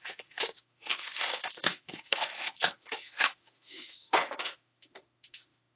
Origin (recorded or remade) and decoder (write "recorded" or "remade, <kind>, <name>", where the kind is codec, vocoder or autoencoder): remade, autoencoder, DAC-VAE